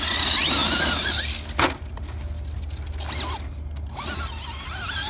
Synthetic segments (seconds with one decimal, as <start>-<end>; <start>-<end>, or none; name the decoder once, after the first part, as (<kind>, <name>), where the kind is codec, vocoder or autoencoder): none